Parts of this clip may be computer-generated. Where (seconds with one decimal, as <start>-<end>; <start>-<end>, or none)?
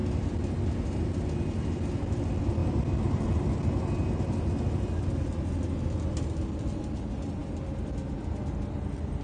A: 0.8-2.6; 6.8-7.4; 8.1-9.2